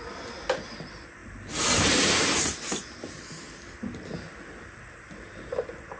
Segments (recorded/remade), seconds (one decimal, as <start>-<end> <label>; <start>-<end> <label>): 0.0-6.0 recorded